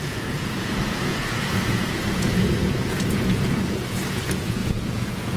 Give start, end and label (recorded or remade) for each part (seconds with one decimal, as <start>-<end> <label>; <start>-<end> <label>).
0.0-5.4 remade